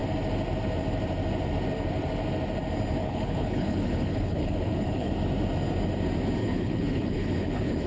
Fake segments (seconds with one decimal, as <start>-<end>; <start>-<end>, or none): 3.0-5.1; 6.4-7.9